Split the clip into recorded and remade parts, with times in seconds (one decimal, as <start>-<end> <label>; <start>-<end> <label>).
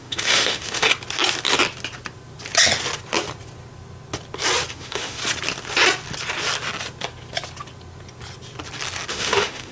0.0-0.9 remade; 0.9-4.7 recorded; 4.7-5.2 remade; 5.2-9.1 recorded; 9.1-9.7 remade